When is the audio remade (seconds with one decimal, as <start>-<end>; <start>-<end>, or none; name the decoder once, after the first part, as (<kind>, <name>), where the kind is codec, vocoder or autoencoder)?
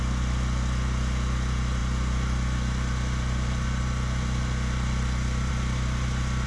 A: none